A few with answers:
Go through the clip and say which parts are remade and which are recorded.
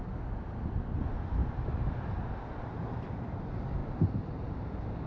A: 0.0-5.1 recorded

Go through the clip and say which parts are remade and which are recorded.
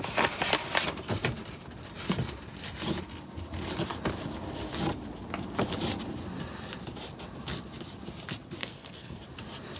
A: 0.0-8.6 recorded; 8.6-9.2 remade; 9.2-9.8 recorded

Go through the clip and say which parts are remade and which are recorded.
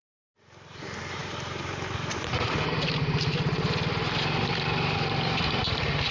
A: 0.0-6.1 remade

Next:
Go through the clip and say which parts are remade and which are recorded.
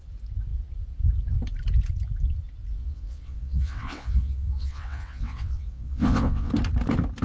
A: 0.0-2.7 recorded; 2.7-6.5 remade; 6.5-7.2 recorded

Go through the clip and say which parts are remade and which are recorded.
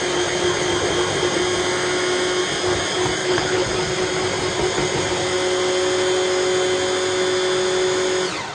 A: 0.0-3.2 recorded; 3.2-3.7 remade; 3.7-8.5 recorded